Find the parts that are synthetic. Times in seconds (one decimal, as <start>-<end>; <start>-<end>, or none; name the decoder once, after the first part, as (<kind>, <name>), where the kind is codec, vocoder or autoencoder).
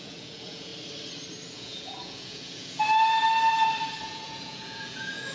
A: 0.0-0.7 (vocoder, Vocos); 1.5-2.8; 4.0-5.3